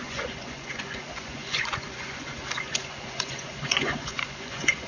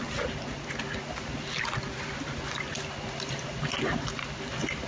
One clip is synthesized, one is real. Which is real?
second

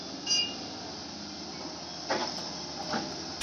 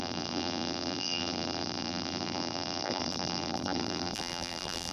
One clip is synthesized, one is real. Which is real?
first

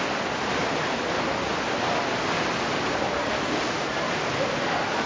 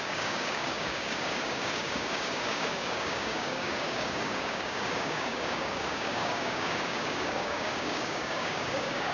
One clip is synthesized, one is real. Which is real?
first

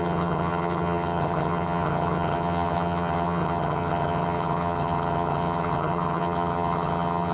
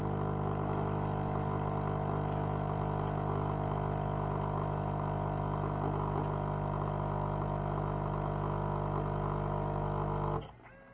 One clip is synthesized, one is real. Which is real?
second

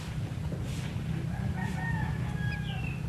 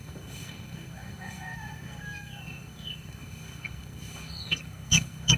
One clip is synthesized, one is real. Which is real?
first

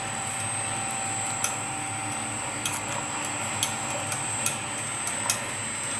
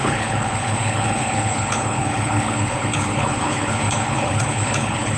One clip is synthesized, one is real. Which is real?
first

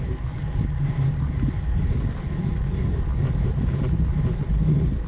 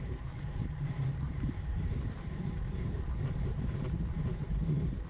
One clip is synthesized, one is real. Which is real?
first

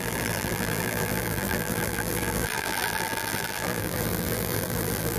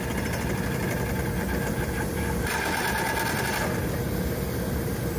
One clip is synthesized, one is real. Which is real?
second